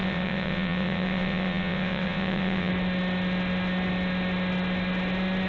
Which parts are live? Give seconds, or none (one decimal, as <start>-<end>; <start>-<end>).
2.7-5.5